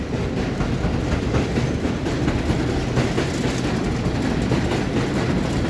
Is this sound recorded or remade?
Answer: recorded